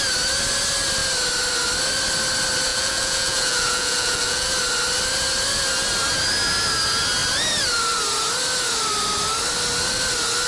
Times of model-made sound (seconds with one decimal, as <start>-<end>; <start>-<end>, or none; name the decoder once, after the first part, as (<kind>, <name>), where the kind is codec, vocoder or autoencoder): 2.7-4.5 (vocoder, Vocos)